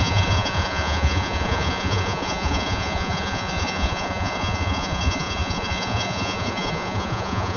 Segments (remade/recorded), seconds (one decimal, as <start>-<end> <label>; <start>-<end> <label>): 0.0-7.6 remade